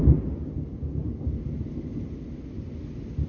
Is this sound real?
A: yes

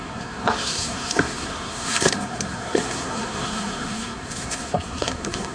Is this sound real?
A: no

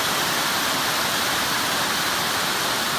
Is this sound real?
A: yes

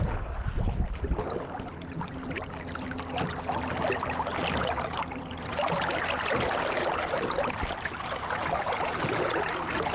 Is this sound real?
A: yes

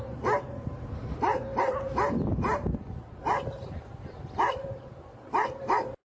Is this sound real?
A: yes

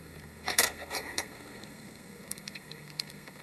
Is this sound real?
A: no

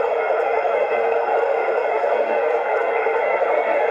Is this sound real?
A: no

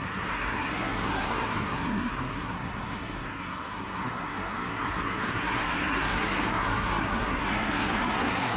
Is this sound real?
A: no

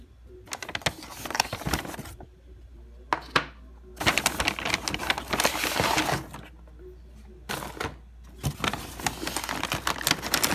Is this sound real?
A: yes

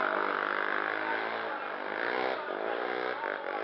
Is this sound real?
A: yes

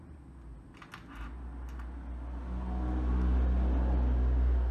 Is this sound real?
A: yes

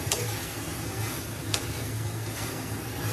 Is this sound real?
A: no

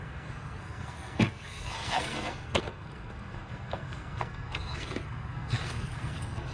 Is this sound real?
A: no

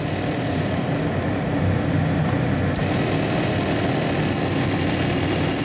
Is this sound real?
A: yes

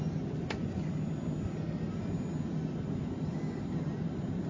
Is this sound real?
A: yes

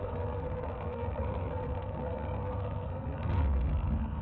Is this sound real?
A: no